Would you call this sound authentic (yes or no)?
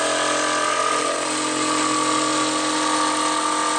yes